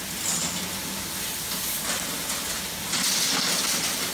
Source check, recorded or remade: recorded